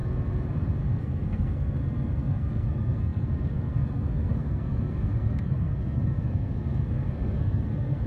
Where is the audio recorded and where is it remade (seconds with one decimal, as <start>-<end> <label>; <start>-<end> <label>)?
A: 0.0-0.8 recorded; 0.8-8.1 remade